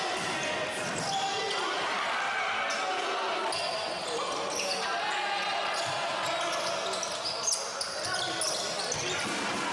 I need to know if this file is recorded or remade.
recorded